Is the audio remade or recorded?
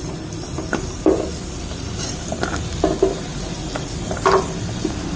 recorded